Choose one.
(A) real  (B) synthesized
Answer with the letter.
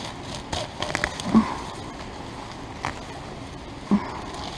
A